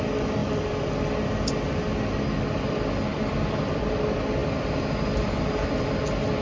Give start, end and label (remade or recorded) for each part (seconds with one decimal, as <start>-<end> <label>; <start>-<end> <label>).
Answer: 0.0-0.4 recorded; 0.4-0.9 remade; 0.9-3.1 recorded; 3.1-3.8 remade; 3.8-6.4 recorded